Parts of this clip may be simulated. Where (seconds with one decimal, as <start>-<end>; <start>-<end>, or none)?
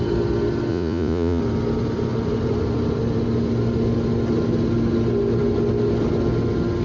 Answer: 0.7-1.4